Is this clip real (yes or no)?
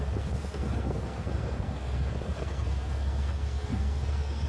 no